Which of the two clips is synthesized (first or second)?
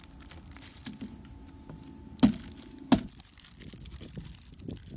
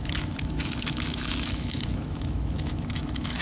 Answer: second